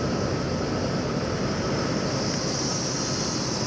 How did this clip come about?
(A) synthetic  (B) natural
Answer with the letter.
B